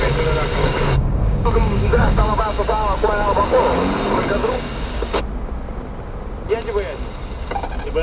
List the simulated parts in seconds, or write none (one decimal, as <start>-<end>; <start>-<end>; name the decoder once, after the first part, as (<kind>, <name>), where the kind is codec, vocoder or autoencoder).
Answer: 0.6-2.4 (codec, DAC); 4.4-5.2